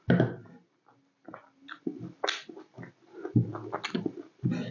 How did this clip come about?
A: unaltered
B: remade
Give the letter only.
A